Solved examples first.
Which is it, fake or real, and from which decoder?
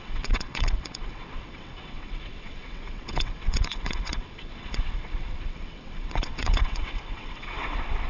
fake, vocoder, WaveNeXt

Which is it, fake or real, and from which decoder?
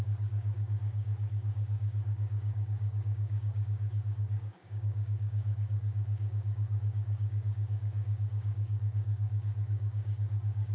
fake, codec, DAC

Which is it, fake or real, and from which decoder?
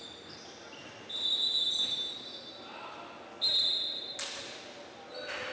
real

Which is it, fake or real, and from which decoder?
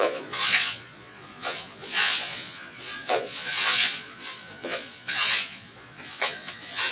fake, vocoder, Vocos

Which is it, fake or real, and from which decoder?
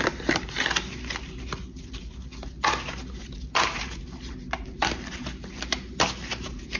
real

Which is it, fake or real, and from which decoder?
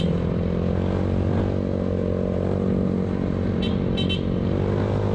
real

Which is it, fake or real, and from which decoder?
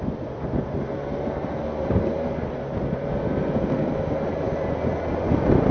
real